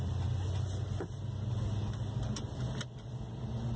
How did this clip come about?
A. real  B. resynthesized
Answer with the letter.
A